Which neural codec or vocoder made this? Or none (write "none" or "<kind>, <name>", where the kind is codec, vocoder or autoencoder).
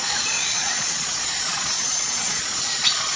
vocoder, Vocos